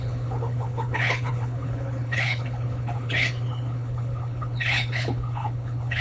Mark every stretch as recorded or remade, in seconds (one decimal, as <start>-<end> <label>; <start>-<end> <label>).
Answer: 0.0-6.0 remade